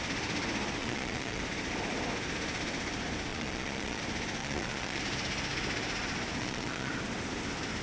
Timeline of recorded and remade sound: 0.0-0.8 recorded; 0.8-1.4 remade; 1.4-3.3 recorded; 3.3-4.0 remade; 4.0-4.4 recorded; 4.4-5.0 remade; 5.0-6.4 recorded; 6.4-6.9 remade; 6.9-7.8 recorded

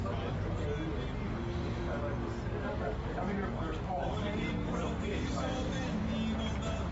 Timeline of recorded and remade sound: 0.0-2.2 recorded; 2.2-5.7 remade; 5.7-6.9 recorded

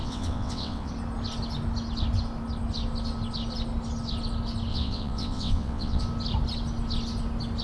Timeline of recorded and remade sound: 0.0-0.9 remade; 0.9-4.7 recorded; 4.7-6.0 remade; 6.0-7.6 recorded